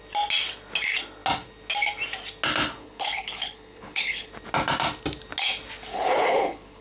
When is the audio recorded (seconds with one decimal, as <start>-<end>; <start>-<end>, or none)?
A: 0.0-2.8; 4.3-5.9